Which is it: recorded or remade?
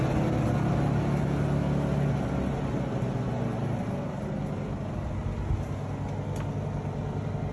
recorded